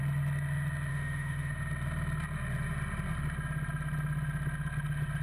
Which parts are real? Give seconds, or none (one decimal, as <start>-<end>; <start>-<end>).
0.0-0.9; 1.5-5.2